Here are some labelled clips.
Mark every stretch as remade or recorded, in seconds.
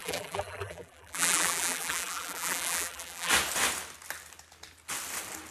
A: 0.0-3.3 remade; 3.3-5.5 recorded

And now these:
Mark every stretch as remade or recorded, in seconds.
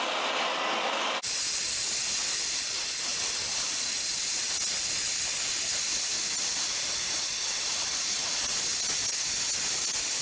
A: 0.0-3.1 recorded; 3.1-4.2 remade; 4.2-10.2 recorded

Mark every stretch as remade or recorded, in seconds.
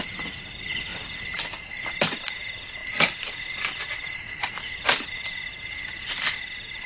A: 0.0-0.9 recorded; 0.9-2.3 remade; 2.3-6.9 recorded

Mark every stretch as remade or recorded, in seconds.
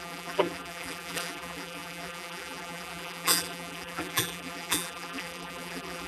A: 0.0-6.1 remade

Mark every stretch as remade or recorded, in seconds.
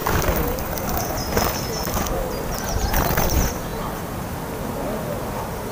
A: 0.0-5.7 recorded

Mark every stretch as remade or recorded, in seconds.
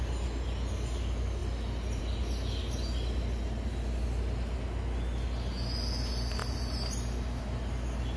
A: 0.0-8.2 recorded